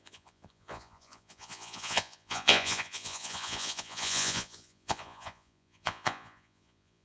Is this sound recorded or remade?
remade